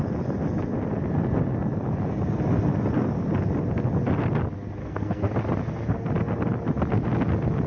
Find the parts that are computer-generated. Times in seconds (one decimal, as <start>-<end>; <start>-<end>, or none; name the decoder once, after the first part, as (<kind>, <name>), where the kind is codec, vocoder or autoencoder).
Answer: 4.8-5.3 (codec, SNAC)